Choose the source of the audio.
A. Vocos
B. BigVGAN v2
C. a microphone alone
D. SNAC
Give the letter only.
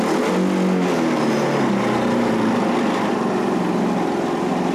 C